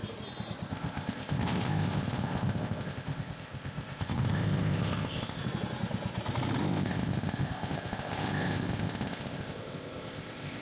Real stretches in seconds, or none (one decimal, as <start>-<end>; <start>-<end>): 0.0-0.7; 5.4-6.6